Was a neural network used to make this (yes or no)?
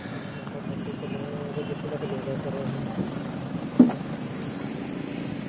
no